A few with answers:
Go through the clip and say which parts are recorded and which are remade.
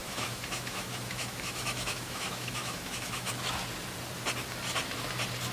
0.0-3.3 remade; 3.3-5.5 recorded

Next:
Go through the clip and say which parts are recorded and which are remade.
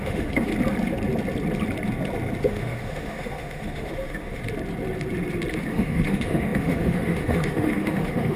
0.0-0.5 remade; 0.5-2.4 recorded; 2.4-4.4 remade; 4.4-5.6 recorded; 5.6-8.4 remade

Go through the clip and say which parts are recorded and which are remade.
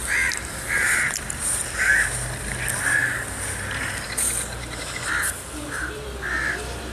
0.0-6.9 recorded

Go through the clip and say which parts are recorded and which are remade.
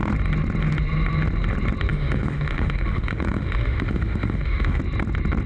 0.0-1.9 recorded; 1.9-4.8 remade; 4.8-5.5 recorded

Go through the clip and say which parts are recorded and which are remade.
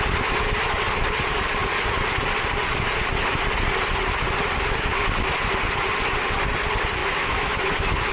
0.0-7.0 recorded; 7.0-8.1 remade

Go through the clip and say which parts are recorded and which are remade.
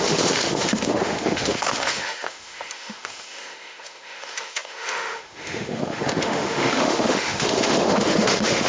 0.0-8.7 remade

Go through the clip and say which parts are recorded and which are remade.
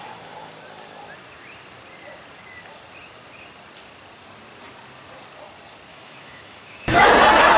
0.0-5.9 recorded; 5.9-7.1 remade; 7.1-7.6 recorded